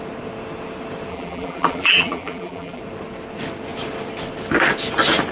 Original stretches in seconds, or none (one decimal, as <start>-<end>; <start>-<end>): 0.0-1.1; 2.8-5.3